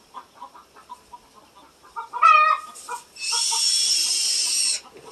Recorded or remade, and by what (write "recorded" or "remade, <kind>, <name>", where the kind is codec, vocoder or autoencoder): recorded